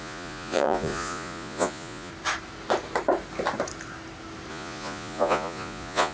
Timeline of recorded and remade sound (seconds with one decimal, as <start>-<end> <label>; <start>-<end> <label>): 0.0-2.1 remade; 2.1-4.5 recorded; 4.5-6.1 remade